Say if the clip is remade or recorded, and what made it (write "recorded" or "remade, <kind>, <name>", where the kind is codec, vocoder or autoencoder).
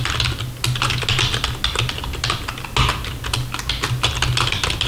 recorded